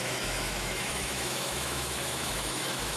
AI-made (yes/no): yes